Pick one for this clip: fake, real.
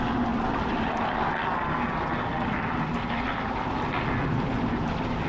real